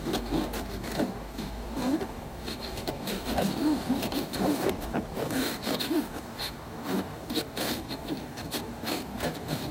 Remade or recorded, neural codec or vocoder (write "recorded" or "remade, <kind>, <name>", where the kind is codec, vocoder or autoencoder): remade, codec, DAC